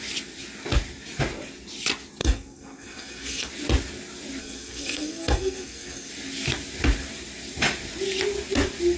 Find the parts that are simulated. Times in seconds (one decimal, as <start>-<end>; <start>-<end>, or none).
2.2-3.5; 4.4-6.1